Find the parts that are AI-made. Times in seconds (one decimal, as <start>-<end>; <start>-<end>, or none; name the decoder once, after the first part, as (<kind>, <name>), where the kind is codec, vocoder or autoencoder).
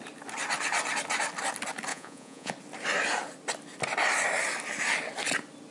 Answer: 1.9-2.5 (vocoder, Vocos)